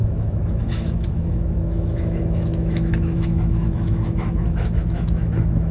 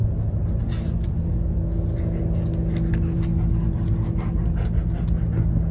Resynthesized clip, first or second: first